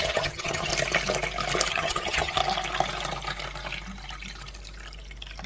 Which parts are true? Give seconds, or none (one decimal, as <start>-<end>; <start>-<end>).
0.7-1.7; 2.4-5.5